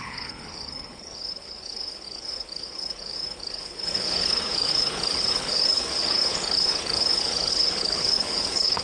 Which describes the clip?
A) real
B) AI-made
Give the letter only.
B